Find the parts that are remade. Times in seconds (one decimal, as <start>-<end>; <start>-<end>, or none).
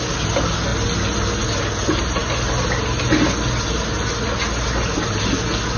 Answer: none